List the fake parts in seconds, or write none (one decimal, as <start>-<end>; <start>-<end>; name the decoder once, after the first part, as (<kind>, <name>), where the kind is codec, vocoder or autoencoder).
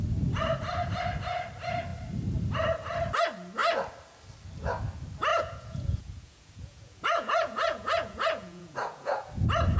5.3-9.3 (vocoder, Vocos)